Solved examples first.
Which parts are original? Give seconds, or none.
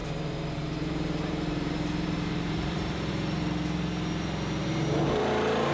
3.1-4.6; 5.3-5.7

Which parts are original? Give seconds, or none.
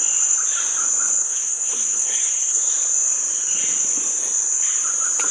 0.0-1.2; 2.7-5.3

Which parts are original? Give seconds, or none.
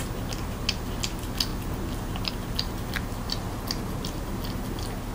0.0-5.1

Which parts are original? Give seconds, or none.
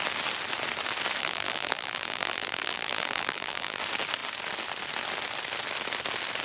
0.0-1.2; 3.8-6.4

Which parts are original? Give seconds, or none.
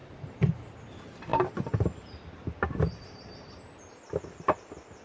0.8-5.0